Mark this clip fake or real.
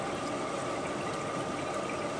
real